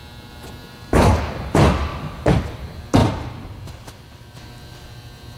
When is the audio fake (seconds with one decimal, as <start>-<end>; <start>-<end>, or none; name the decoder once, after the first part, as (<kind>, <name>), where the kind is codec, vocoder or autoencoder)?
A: 1.9-2.4 (vocoder, BigVGAN v2); 3.0-4.4